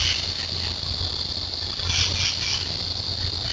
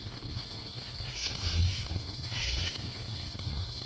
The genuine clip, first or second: first